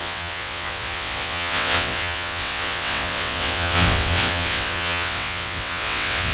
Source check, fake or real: fake